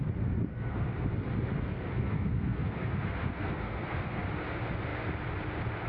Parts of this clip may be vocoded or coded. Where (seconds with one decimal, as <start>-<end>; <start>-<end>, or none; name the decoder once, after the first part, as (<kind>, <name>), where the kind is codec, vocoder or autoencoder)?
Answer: 0.5-1.1 (codec, SNAC); 1.7-4.2